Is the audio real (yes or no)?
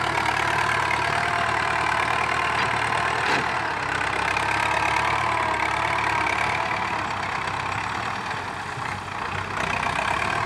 yes